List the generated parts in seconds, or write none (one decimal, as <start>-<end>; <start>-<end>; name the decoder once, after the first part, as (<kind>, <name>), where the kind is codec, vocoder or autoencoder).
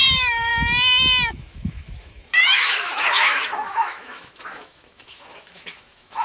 0.0-0.5 (autoencoder, DAC-VAE); 1.3-6.2